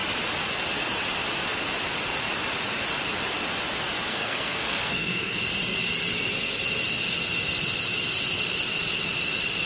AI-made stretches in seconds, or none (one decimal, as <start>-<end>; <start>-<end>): 4.1-5.4